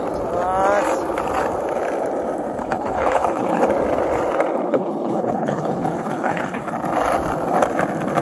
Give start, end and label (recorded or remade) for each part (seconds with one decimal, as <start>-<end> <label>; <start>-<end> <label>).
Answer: 0.0-2.6 recorded; 2.6-3.6 remade; 3.6-4.7 recorded; 4.7-6.7 remade; 6.7-8.2 recorded